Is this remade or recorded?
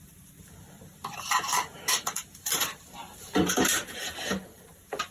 remade